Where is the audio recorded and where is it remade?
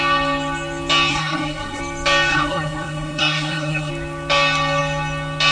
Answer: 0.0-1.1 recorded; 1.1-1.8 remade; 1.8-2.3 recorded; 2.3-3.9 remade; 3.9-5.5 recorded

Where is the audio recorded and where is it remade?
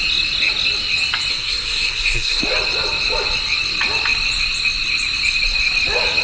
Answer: 0.0-1.3 recorded; 1.3-2.4 remade; 2.4-6.2 recorded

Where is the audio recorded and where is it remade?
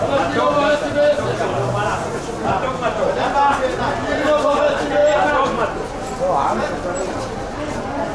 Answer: 0.0-8.1 recorded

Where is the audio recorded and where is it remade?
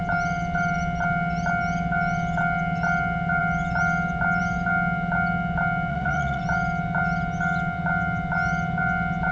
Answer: 0.0-5.9 recorded; 5.9-6.4 remade; 6.4-9.3 recorded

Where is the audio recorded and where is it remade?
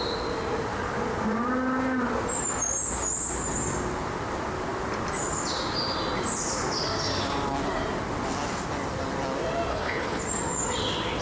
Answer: 0.0-9.7 recorded; 9.7-10.2 remade; 10.2-11.2 recorded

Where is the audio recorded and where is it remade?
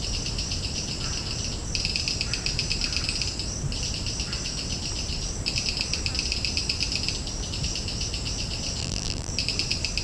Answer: 0.0-8.8 recorded; 8.8-9.3 remade; 9.3-10.0 recorded